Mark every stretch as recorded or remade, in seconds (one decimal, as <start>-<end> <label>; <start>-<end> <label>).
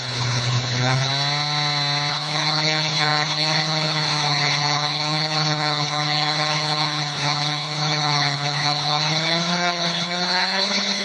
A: 0.0-1.1 remade; 1.1-2.1 recorded; 2.1-11.0 remade